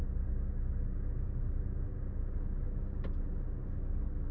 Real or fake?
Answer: real